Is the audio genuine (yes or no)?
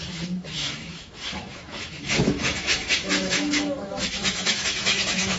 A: no